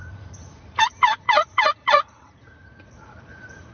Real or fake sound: fake